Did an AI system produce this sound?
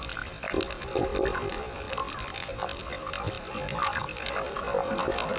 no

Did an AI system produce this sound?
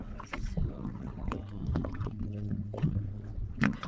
yes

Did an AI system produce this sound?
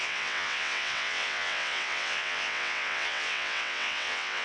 yes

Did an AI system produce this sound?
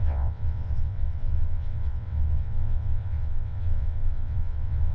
yes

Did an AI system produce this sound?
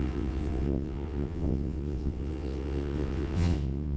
yes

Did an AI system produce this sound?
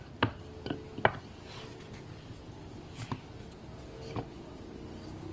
no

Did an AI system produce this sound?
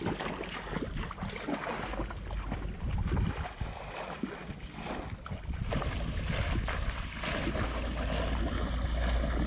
no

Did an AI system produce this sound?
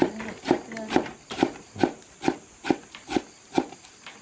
no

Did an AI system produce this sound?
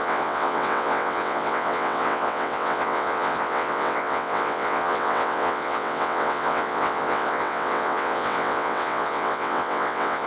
yes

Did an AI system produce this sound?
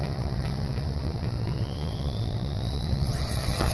yes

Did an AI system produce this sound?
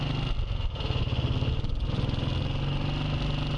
no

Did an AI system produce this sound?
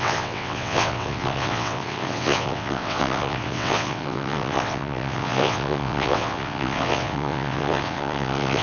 yes